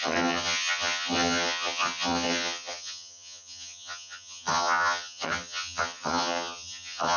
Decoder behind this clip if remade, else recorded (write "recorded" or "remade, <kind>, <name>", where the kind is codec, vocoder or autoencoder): remade, vocoder, HiFi-GAN